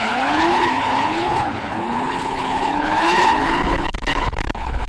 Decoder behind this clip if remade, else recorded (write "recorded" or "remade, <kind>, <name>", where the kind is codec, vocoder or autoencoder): remade, codec, HILCodec